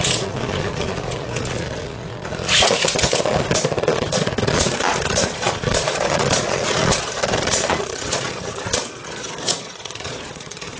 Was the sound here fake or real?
fake